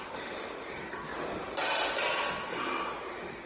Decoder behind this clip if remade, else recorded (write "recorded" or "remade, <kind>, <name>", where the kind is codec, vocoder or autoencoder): recorded